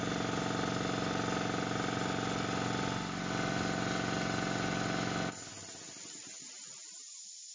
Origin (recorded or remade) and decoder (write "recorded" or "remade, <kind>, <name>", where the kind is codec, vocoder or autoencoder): recorded